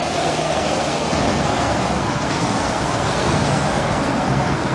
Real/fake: fake